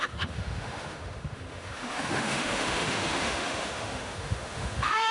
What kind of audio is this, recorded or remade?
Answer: remade